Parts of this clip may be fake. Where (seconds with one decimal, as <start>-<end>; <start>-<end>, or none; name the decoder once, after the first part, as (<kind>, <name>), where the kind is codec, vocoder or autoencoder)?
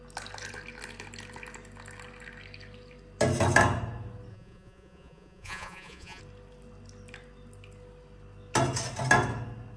4.3-6.2 (vocoder, Vocos)